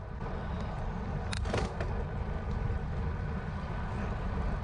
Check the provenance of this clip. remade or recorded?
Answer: recorded